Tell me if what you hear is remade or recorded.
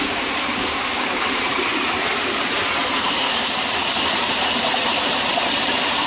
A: remade